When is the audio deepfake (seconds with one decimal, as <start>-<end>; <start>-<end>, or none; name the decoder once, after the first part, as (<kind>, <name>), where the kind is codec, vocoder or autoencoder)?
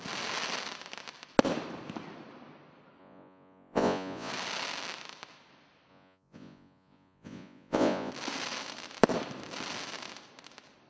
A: 3.0-4.3 (vocoder, Vocos); 5.9-8.1